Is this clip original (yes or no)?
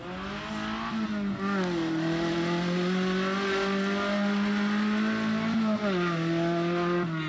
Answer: yes